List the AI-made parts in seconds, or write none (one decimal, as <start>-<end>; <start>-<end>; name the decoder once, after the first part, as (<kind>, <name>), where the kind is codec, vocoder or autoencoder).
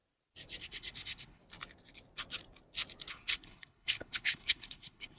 0.6-1.4 (codec, HILCodec); 3.1-5.2